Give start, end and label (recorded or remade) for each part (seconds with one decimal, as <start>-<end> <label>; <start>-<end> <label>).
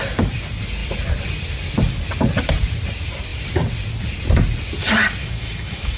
0.0-5.2 recorded; 5.2-6.0 remade